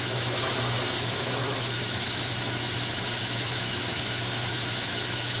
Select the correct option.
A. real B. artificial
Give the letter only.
B